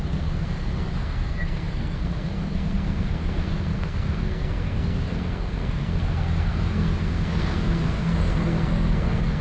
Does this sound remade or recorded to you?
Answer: remade